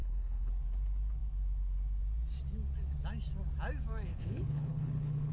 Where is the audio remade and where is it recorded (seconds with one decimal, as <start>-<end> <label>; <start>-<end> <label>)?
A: 0.0-0.5 remade; 0.5-4.1 recorded; 4.1-5.3 remade